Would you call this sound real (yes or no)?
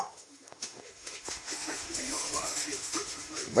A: no